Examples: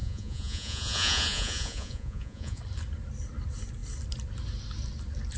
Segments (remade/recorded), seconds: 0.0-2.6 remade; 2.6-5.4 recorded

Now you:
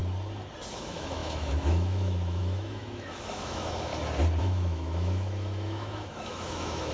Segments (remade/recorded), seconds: 0.0-0.7 recorded; 0.7-3.9 remade; 3.9-4.4 recorded; 4.4-6.9 remade

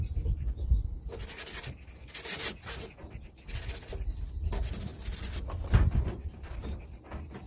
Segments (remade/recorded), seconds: 0.0-7.5 recorded

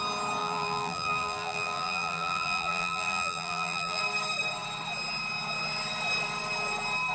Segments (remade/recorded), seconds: 0.0-0.4 recorded; 0.4-4.0 remade; 4.0-7.1 recorded

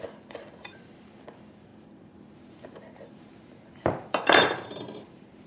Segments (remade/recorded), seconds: 0.0-5.5 remade